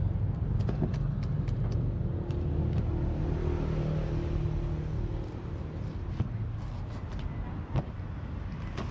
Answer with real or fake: real